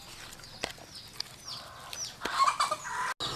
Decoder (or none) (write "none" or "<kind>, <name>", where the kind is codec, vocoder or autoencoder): none